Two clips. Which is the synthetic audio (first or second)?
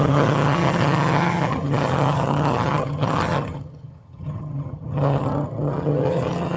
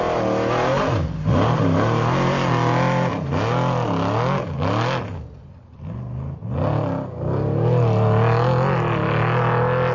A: first